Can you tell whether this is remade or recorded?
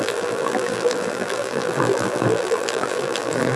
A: remade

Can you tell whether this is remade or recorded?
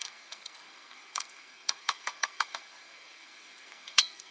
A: remade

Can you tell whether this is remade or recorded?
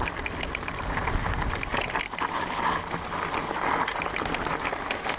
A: recorded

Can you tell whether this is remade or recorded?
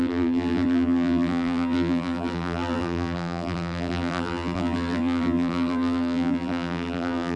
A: remade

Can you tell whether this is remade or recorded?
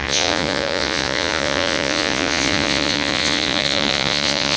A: remade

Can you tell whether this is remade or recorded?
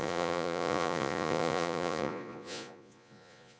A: remade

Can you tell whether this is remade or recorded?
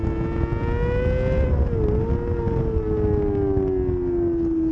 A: recorded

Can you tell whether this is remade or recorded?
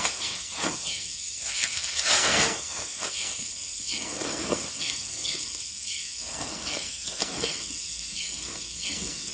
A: remade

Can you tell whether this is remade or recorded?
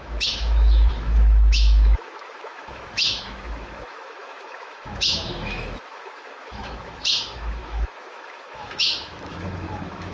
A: remade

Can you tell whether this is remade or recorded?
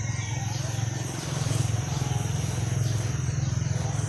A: recorded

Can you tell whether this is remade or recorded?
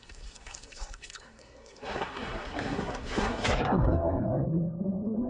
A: remade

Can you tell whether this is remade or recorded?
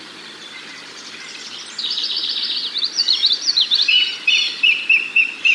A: remade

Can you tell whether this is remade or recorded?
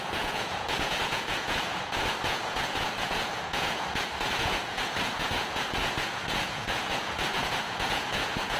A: remade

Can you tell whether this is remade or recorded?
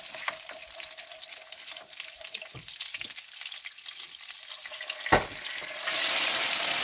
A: recorded